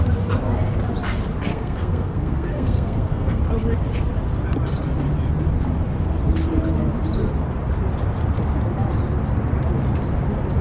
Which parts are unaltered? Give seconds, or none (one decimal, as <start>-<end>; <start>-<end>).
0.0-1.5; 3.4-10.6